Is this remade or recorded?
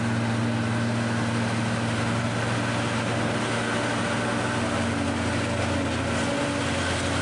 recorded